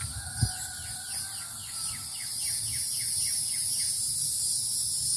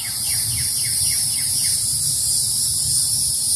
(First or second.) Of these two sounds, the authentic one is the first